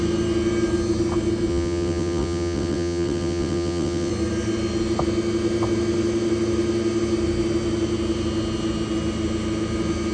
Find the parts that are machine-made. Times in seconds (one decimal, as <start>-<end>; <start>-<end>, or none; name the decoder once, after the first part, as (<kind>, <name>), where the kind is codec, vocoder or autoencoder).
1.5-4.1 (vocoder, WaveNeXt)